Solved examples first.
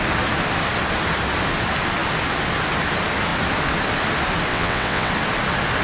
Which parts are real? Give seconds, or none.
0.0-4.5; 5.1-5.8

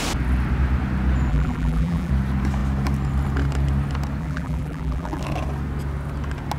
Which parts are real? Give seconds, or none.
0.0-1.3; 2.1-4.2; 5.2-6.6